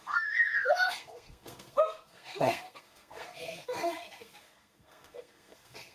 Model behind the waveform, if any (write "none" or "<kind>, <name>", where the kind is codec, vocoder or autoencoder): codec, SNAC